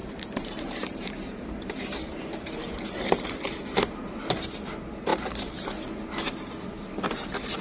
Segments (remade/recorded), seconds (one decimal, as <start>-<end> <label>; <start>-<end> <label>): 0.0-3.5 remade; 3.5-7.6 recorded